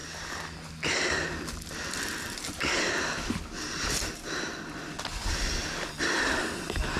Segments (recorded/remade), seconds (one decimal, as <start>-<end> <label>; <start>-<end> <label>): 0.0-7.0 recorded